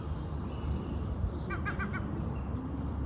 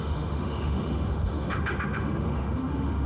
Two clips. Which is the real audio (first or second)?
first